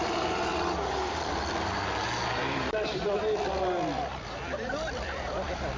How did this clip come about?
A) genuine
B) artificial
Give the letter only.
B